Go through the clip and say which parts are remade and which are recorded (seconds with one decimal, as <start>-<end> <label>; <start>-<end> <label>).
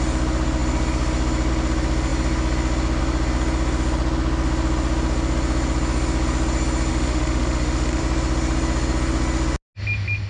0.0-6.9 recorded; 6.9-8.0 remade; 8.0-10.3 recorded